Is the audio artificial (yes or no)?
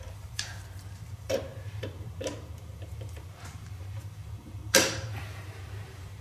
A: yes